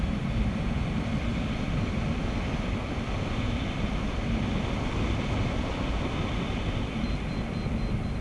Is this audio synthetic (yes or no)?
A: no